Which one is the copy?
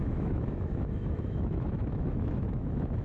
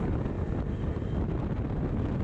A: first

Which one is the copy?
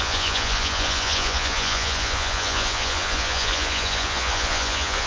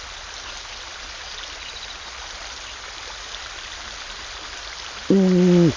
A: first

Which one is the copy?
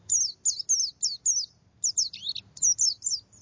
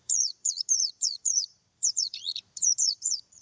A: second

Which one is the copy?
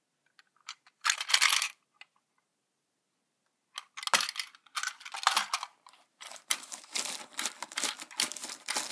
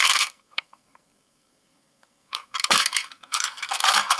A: second